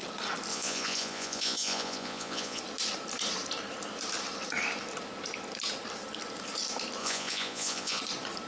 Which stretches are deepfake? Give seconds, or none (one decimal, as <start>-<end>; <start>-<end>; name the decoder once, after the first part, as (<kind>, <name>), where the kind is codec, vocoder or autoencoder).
0.5-2.6 (vocoder, Vocos); 7.0-8.0